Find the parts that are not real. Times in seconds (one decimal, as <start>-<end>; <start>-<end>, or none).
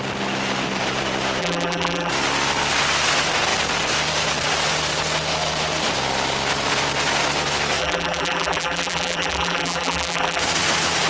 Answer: 1.4-2.1; 7.8-10.4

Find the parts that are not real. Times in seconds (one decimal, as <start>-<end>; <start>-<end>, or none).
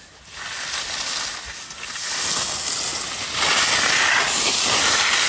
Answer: none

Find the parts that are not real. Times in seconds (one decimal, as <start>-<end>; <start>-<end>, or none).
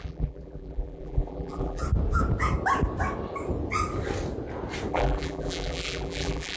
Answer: 0.0-1.8; 4.9-6.6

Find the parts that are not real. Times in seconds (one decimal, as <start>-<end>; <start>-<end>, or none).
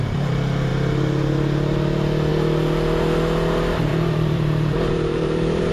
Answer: 3.9-5.7